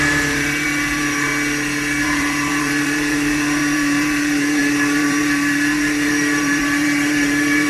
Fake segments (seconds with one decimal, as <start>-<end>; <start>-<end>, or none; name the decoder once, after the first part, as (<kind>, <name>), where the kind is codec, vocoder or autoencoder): 0.0-1.3 (vocoder, BigVGAN v2); 2.0-7.7